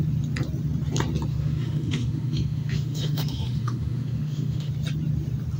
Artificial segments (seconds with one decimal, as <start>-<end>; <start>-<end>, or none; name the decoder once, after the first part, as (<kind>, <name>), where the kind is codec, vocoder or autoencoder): 1.3-4.7 (autoencoder, DAC-VAE)